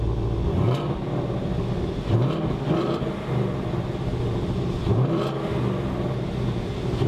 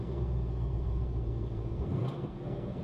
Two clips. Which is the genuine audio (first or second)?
first